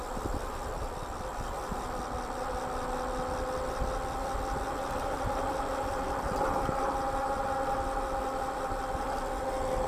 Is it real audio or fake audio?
real